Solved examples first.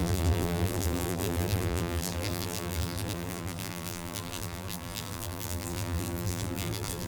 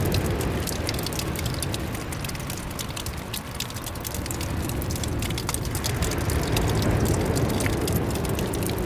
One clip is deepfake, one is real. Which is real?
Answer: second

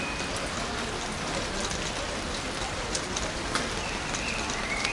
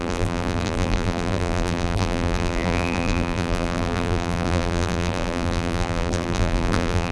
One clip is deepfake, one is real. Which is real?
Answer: first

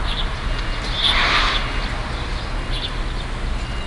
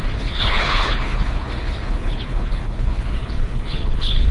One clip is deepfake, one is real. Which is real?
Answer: first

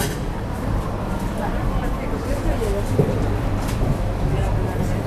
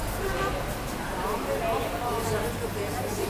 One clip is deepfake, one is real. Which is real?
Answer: second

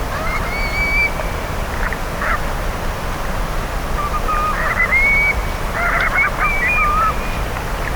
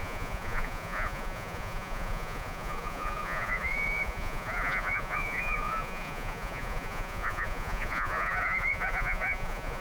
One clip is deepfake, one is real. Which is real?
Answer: first